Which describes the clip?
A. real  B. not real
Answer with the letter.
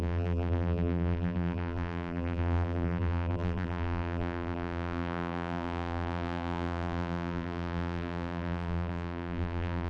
B